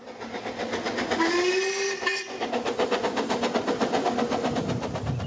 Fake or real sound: real